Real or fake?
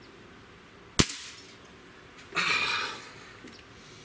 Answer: real